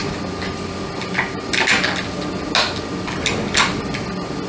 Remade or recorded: recorded